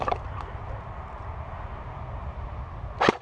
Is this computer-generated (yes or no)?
no